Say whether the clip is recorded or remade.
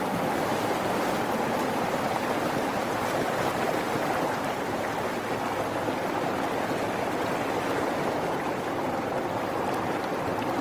recorded